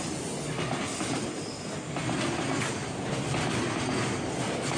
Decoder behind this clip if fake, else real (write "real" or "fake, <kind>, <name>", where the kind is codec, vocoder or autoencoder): real